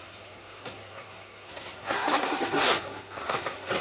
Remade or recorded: remade